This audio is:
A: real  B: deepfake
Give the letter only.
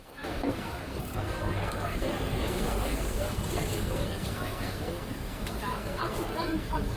B